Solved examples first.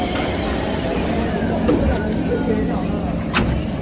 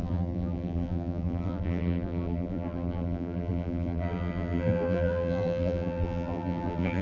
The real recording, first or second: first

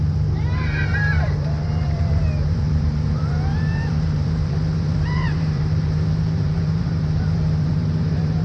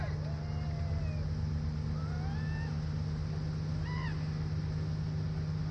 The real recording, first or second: second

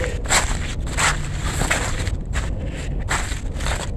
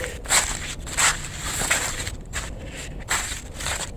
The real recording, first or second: first